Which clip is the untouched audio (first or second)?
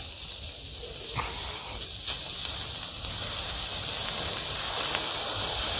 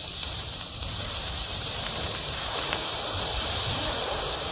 first